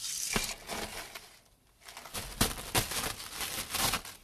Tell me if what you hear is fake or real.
real